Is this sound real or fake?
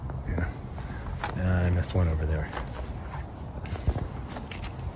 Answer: real